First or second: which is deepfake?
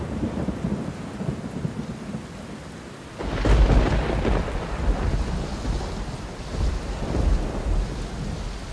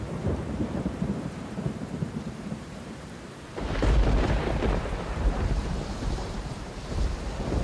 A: second